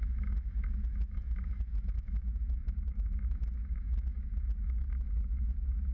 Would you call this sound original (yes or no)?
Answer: no